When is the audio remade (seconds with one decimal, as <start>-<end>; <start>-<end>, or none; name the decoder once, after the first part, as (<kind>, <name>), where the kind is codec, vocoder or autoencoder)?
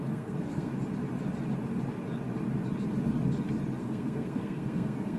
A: 0.0-0.7 (codec, SNAC); 3.8-5.2